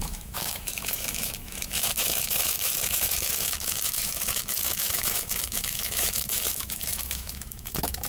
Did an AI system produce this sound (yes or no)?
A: yes